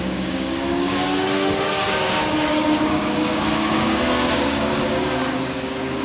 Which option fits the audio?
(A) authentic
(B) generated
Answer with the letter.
B